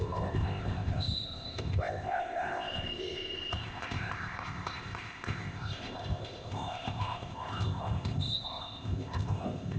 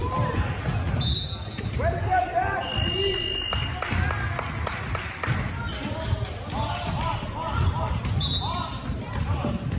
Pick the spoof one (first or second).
first